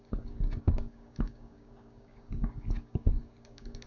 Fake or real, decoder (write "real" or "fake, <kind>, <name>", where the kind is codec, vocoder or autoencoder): fake, codec, DAC